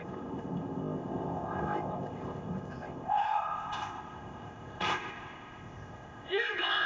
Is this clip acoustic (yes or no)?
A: no